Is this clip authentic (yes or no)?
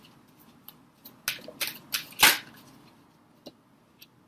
yes